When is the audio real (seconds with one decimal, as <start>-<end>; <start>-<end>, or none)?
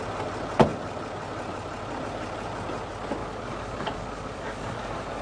0.0-3.2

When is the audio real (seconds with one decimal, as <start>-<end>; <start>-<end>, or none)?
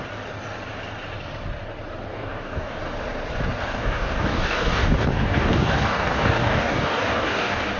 0.0-2.1; 2.8-3.6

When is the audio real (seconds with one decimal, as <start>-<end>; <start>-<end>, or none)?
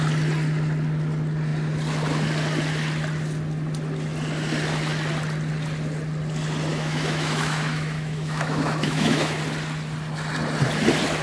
0.0-6.7; 9.4-11.2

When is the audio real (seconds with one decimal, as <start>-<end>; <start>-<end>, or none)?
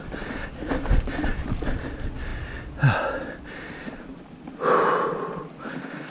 0.0-6.1